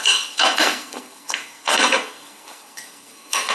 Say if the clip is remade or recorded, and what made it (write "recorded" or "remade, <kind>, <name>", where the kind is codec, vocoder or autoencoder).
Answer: remade, codec, SNAC